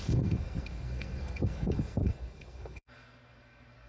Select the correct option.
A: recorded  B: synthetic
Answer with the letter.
B